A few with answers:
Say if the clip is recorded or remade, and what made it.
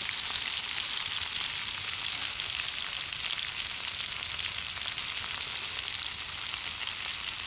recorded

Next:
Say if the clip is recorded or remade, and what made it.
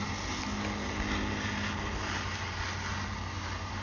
recorded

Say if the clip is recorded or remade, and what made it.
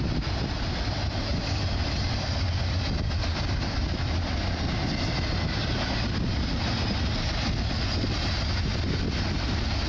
recorded